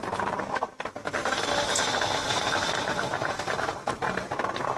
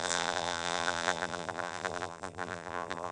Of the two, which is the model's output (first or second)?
second